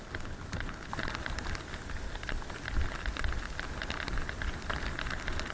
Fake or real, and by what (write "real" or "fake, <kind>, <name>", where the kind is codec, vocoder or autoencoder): real